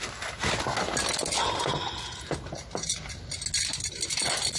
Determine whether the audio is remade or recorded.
recorded